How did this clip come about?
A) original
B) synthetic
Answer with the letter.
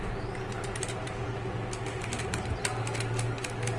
A